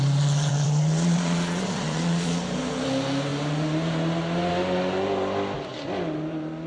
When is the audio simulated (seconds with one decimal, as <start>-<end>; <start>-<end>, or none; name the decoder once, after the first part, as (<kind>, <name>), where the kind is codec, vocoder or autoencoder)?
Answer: 0.5-2.4 (vocoder, Vocos)